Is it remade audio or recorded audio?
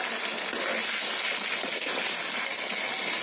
recorded